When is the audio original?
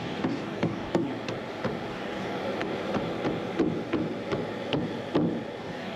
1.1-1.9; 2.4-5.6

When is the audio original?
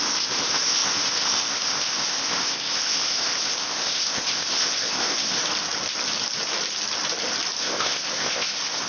5.4-7.6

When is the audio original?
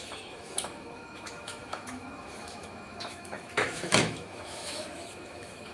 none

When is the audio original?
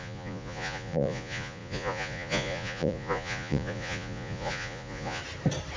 5.2-5.8